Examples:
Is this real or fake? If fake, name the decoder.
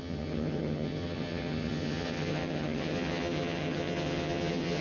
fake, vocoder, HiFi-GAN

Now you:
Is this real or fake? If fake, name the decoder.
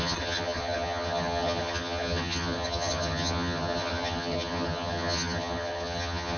fake, vocoder, HiFi-GAN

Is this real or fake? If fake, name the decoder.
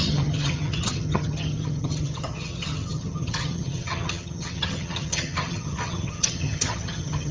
fake, vocoder, HiFi-GAN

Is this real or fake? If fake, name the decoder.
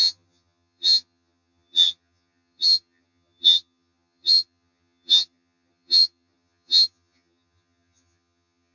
fake, vocoder, HiFi-GAN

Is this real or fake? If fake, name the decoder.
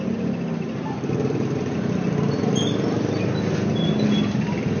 real